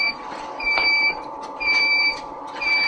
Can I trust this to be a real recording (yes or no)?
no